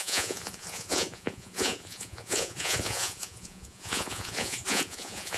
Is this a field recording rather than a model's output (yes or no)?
no